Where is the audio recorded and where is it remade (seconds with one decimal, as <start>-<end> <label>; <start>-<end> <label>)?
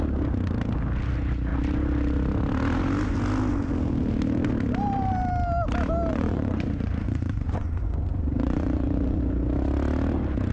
0.0-6.1 recorded; 6.1-9.2 remade; 9.2-10.5 recorded